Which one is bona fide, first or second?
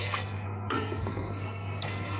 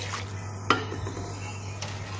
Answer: second